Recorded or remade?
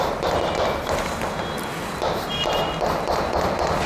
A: remade